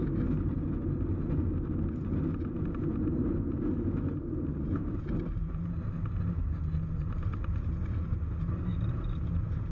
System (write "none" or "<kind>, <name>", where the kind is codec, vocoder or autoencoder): none